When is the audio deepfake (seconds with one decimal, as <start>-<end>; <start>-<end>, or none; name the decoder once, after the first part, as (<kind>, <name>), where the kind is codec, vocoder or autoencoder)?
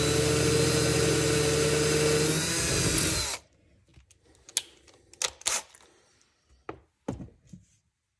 none